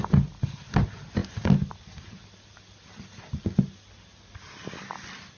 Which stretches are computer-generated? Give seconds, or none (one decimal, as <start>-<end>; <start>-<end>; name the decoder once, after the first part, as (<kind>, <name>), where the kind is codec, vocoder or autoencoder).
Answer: none